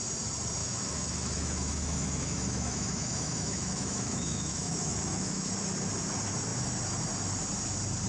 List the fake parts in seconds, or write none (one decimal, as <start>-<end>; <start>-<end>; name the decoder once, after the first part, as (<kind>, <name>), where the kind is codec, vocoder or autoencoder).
0.6-5.5 (autoencoder, DAC-VAE)